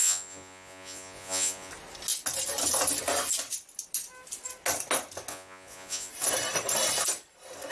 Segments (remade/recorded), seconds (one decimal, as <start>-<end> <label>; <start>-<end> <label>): 0.0-1.7 remade; 1.7-5.3 recorded; 5.3-6.1 remade; 6.1-7.7 recorded